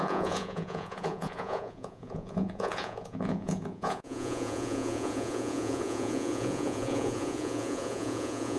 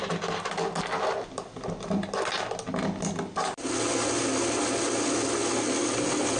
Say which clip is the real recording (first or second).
second